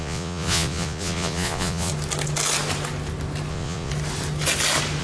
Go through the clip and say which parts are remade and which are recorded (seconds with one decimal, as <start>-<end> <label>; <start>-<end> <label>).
0.0-1.9 remade; 1.9-3.5 recorded; 3.5-3.9 remade; 3.9-5.0 recorded